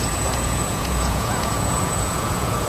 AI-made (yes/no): yes